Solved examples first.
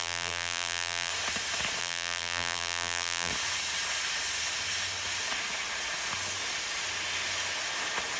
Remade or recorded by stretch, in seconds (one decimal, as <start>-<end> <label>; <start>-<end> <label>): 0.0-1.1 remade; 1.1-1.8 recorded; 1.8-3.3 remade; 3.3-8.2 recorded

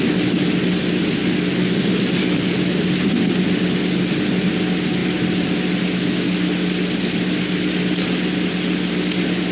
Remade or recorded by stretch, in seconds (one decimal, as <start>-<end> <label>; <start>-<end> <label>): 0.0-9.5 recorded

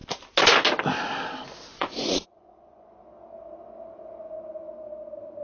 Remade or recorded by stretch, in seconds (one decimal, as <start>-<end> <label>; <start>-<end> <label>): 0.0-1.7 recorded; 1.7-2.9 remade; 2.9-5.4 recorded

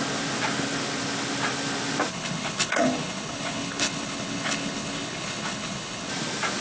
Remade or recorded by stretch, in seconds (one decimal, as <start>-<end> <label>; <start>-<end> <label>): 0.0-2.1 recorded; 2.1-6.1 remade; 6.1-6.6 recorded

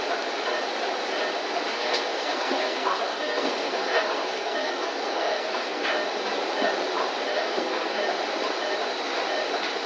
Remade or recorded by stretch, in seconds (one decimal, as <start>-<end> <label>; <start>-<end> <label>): 0.0-1.7 recorded; 1.7-5.9 remade; 5.9-7.3 recorded; 7.3-8.0 remade; 8.0-9.9 recorded

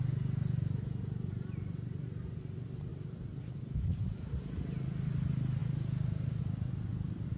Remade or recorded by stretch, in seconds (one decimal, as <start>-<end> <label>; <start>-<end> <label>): 0.0-2.9 recorded; 2.9-4.0 remade; 4.0-5.6 recorded; 5.6-6.4 remade; 6.4-7.4 recorded

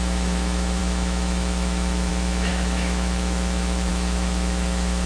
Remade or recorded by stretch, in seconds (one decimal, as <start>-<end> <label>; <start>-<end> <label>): 0.0-5.1 remade